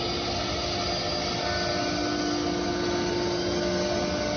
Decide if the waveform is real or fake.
real